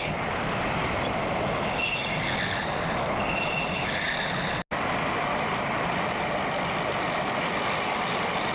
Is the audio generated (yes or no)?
no